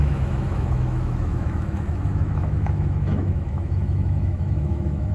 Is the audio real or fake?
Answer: fake